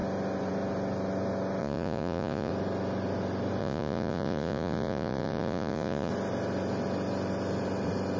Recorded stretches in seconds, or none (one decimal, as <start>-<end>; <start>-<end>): 0.0-1.6; 2.5-3.6; 6.1-8.2